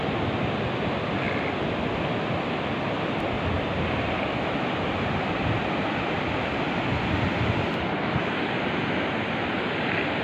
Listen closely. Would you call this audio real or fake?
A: real